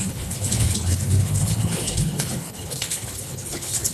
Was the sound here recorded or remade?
remade